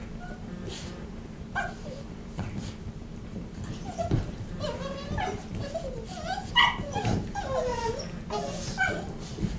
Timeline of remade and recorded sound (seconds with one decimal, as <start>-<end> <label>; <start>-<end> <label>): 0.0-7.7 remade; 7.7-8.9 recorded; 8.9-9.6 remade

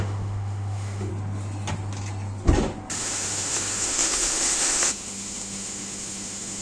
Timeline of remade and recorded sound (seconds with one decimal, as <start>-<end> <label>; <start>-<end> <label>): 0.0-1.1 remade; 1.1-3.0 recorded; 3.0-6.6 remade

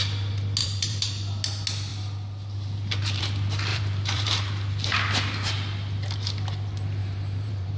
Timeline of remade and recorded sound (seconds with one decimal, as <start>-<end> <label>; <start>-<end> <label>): 0.0-0.6 recorded; 0.6-1.1 remade; 1.1-3.7 recorded; 3.7-4.5 remade; 4.5-7.0 recorded; 7.0-7.8 remade

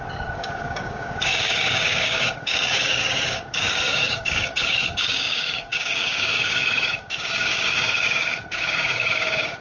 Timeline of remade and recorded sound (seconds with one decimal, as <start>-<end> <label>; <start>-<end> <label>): 0.0-9.6 remade

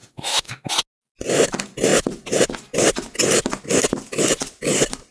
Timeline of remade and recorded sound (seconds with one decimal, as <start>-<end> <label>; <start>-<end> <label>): 0.0-0.7 remade; 0.7-5.1 recorded

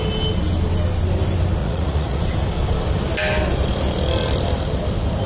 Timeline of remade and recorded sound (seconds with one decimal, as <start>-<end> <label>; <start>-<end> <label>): 0.0-1.6 recorded; 1.6-2.2 remade; 2.2-5.3 recorded

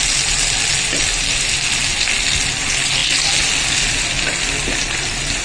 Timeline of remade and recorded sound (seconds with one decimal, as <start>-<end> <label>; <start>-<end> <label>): 0.0-5.4 recorded

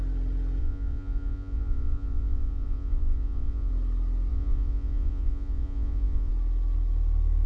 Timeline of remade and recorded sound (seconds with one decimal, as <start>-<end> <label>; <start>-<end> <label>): 0.0-0.6 recorded; 0.6-3.7 remade; 3.7-4.3 recorded; 4.3-6.3 remade; 6.3-7.5 recorded